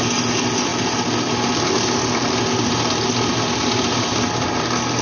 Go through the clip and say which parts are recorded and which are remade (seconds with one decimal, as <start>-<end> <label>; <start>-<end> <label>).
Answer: 0.0-5.0 recorded